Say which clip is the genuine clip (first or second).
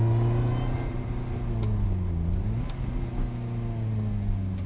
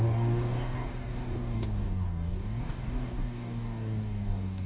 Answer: first